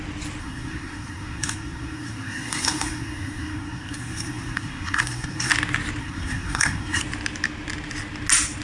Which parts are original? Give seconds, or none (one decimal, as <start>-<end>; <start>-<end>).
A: 0.0-0.4; 5.5-6.0; 7.0-8.6